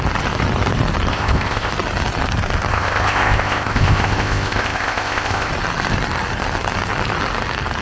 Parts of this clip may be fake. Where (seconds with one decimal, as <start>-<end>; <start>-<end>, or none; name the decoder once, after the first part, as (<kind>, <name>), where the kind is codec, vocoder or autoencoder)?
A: 1.1-1.7 (codec, ZipCodec); 2.7-5.5